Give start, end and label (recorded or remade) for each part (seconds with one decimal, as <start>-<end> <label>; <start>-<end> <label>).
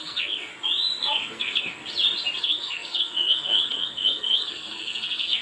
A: 0.0-0.5 remade; 0.5-1.0 recorded; 1.0-1.8 remade; 1.8-2.4 recorded; 2.4-5.4 remade